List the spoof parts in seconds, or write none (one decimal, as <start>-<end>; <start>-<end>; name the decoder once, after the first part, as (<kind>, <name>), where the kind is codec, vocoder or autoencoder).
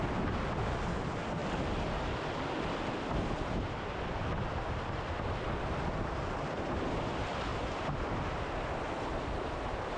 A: none